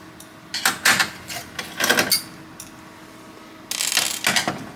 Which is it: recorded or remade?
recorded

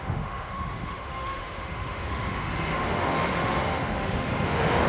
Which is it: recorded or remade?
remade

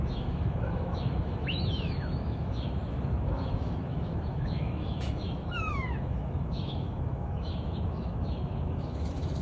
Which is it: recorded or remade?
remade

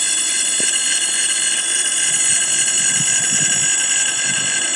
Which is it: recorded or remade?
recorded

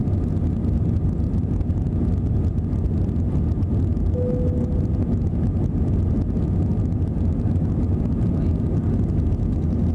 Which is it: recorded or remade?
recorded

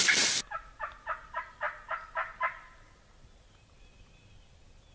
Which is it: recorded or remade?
recorded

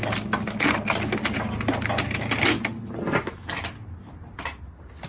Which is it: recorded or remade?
recorded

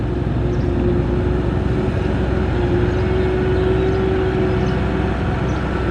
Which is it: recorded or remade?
recorded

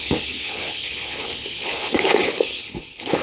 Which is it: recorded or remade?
remade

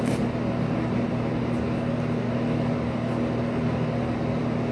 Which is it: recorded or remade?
recorded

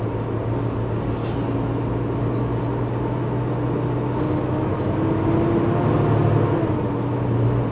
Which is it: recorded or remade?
recorded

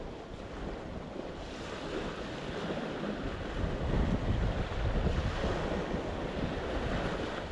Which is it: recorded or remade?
recorded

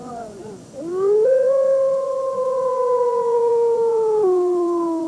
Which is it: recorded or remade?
remade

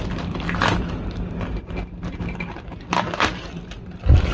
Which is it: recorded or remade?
recorded